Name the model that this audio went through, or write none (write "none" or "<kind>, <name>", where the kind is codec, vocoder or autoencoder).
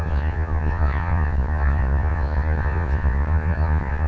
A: vocoder, Vocos